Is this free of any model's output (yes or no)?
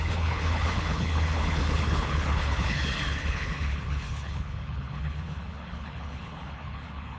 no